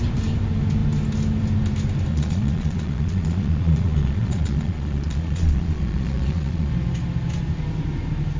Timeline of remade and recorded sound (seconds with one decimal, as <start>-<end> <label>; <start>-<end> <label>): 0.0-2.1 recorded; 2.1-6.7 remade; 6.7-8.4 recorded